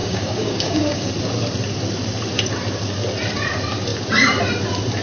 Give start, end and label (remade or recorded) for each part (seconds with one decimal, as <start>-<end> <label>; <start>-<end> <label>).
0.0-1.1 remade; 1.1-5.0 recorded